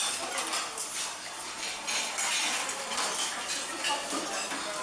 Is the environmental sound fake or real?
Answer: real